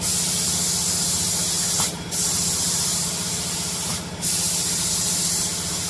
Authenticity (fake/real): real